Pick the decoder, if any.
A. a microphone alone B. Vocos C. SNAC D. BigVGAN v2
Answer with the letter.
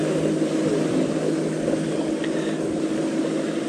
A